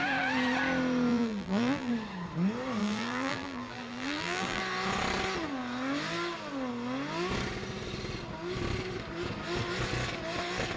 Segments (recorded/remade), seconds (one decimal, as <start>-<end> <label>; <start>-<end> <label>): 0.0-1.1 recorded; 1.1-1.9 remade; 1.9-2.8 recorded; 2.8-4.6 remade; 4.6-10.8 recorded